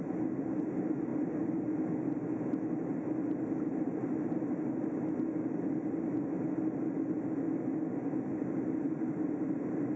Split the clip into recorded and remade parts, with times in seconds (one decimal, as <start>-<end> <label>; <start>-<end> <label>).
0.0-10.0 recorded